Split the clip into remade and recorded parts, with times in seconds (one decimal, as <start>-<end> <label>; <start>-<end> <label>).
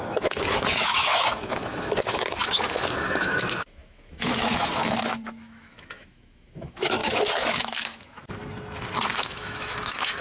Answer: 0.0-8.4 remade; 8.4-9.1 recorded; 9.1-10.2 remade